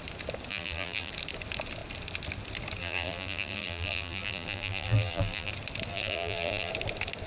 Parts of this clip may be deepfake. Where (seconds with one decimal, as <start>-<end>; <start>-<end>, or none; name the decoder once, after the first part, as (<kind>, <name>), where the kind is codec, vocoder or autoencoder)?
0.5-1.1 (vocoder, BigVGAN v2); 2.8-5.5; 5.9-6.7